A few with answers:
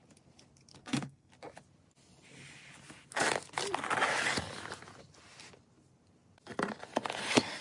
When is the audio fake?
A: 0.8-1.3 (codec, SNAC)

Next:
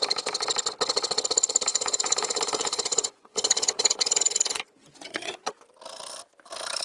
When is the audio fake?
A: 1.7-5.5 (vocoder, Vocos)